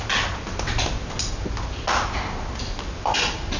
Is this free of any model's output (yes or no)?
yes